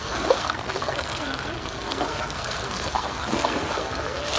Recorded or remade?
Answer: remade